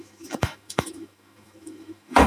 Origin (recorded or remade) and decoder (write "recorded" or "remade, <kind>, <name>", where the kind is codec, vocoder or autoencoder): remade, autoencoder, DAC-VAE